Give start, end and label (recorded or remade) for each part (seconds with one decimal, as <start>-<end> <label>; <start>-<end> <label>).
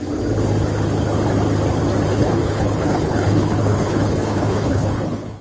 0.0-2.1 recorded; 2.1-5.4 remade